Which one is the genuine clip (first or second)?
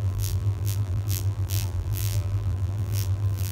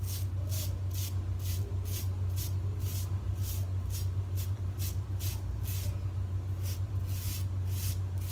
second